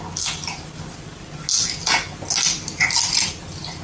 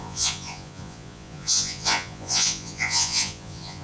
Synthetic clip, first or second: second